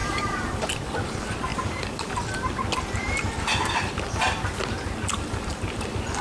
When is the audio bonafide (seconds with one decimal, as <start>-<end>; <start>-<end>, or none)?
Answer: 0.7-6.2